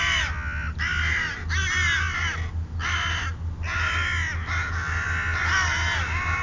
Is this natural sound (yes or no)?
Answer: yes